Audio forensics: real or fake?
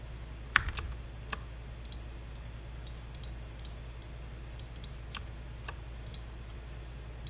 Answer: real